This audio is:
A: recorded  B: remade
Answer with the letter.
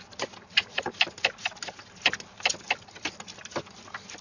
A